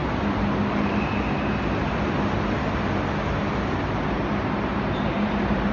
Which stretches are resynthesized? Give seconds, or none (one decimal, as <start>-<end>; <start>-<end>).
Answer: 4.7-5.7